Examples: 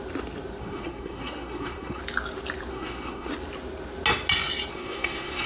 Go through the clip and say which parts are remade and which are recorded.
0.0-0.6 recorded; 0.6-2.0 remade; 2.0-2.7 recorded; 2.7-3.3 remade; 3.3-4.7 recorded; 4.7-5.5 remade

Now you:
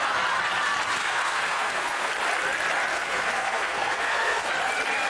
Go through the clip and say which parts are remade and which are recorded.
0.0-1.0 recorded; 1.0-2.1 remade; 2.1-2.9 recorded; 2.9-4.5 remade; 4.5-5.1 recorded

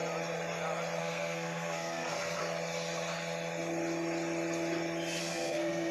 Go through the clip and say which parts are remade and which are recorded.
0.0-1.0 recorded; 1.0-2.4 remade; 2.4-5.2 recorded; 5.2-5.9 remade

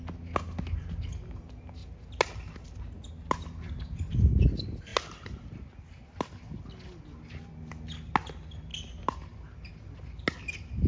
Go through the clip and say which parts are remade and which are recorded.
0.0-10.9 recorded

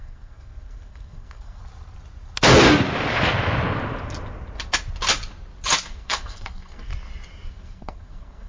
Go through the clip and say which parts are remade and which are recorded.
0.0-1.6 remade; 1.6-5.9 recorded; 5.9-6.9 remade; 6.9-7.5 recorded; 7.5-8.5 remade

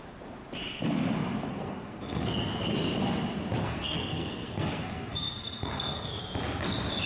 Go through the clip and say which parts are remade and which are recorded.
0.0-1.5 recorded; 1.5-2.5 remade; 2.5-3.6 recorded; 3.6-6.2 remade; 6.2-7.1 recorded

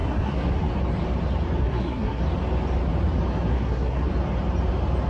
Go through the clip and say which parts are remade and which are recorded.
0.0-0.7 remade; 0.7-1.6 recorded; 1.6-2.2 remade; 2.2-3.5 recorded; 3.5-4.1 remade; 4.1-5.1 recorded